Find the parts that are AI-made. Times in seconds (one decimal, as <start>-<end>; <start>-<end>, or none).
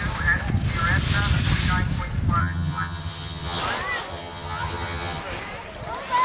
2.4-3.6; 4.1-5.2